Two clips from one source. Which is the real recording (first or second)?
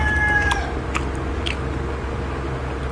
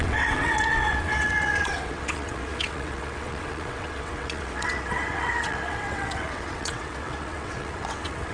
first